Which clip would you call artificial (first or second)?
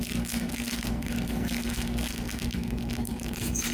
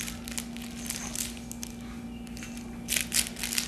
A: first